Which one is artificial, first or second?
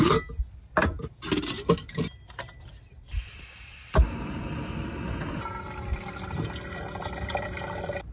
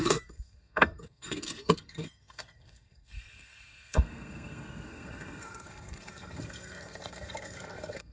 second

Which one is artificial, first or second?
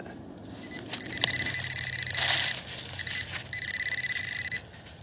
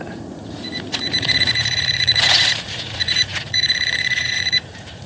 second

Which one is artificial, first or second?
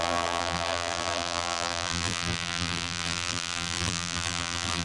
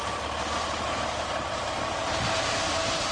first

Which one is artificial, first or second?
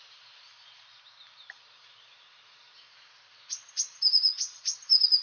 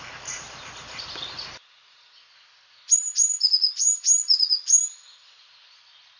first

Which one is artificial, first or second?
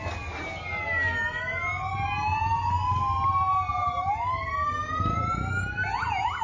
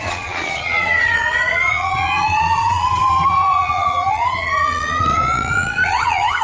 second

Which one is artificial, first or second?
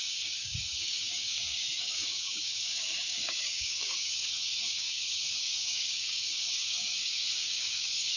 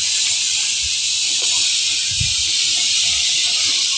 first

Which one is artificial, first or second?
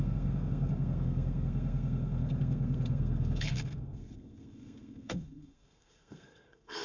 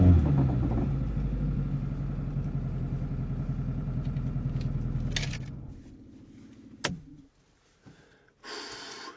first